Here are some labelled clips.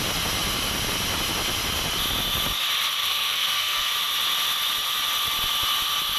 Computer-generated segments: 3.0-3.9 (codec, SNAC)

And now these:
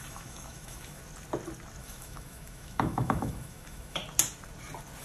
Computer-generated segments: 0.0-1.0 (autoencoder, DAC-VAE); 1.8-4.0

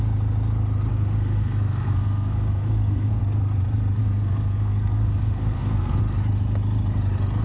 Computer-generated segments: 0.9-3.2 (codec, SNAC); 4.0-6.0

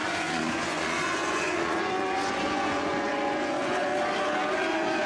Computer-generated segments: 0.0-3.9 (vocoder, Vocos); 4.5-5.1